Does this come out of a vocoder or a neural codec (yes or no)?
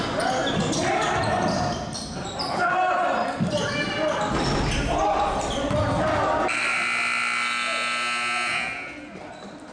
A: no